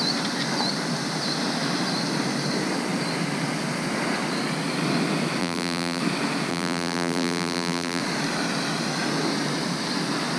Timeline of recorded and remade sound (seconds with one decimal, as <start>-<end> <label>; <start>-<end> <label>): 0.0-5.4 recorded; 5.4-6.0 remade; 6.0-6.5 recorded; 6.5-8.0 remade; 8.0-10.4 recorded